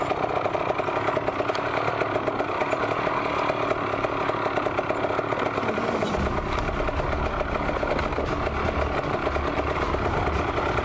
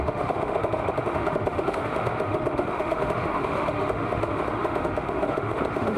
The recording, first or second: first